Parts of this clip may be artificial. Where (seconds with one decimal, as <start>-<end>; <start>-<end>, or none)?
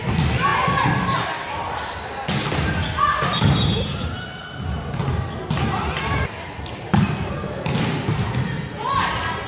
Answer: none